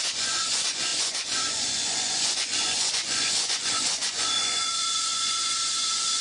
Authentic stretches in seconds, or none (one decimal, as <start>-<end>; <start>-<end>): none